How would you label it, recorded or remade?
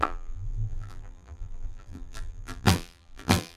remade